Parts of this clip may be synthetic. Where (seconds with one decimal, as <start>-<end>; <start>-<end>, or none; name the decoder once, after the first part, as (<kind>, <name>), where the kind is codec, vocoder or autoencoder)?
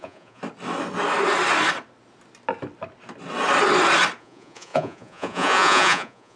0.0-0.4 (vocoder, Vocos); 4.2-6.4